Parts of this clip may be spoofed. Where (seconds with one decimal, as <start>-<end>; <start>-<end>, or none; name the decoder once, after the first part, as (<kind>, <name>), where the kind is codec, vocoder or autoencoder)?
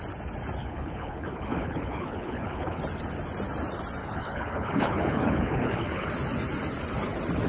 0.6-2.8 (codec, HILCodec); 4.0-6.1